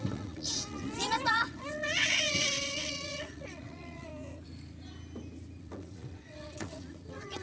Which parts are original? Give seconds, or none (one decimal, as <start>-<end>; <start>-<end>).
4.1-5.6